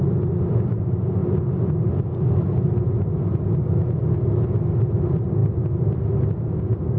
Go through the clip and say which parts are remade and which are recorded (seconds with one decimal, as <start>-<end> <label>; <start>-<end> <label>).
0.0-7.0 recorded